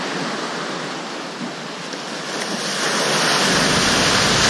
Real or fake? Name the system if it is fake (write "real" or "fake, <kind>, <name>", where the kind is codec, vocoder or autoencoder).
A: real